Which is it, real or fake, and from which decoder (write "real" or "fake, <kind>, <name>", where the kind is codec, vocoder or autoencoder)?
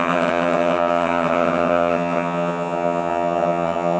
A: fake, vocoder, HiFi-GAN